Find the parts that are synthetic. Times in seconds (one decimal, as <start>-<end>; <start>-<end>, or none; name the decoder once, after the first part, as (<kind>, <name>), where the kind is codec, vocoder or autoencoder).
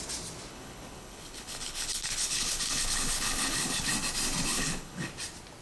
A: 0.5-3.9 (codec, HILCodec); 4.5-5.1